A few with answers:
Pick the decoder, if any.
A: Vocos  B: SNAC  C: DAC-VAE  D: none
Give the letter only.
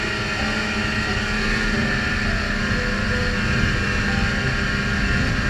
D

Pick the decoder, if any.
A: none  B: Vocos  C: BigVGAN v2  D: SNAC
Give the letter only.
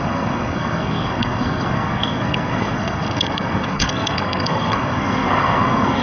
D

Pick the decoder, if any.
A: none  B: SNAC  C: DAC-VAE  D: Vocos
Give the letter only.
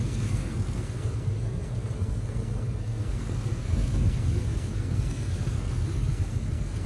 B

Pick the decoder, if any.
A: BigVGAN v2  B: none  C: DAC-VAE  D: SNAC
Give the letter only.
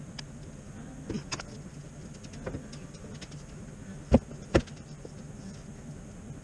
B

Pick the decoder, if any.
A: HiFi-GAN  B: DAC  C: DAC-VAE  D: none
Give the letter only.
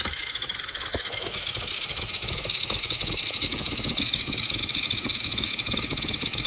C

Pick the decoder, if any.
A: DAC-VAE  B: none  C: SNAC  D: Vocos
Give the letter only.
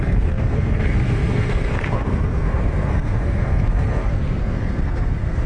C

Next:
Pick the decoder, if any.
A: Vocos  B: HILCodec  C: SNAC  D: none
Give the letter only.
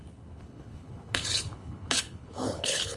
B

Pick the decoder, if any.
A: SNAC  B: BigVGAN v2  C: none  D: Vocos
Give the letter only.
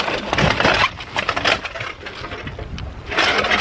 C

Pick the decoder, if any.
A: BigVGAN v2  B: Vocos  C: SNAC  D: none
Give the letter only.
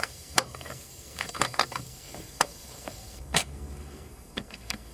C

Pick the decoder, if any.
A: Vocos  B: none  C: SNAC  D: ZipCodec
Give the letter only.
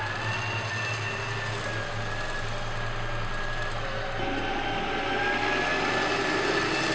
B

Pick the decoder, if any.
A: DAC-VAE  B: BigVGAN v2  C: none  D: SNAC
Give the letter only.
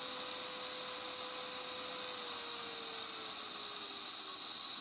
C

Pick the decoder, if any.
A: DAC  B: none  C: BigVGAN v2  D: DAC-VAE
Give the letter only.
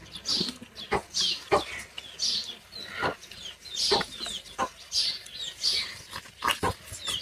B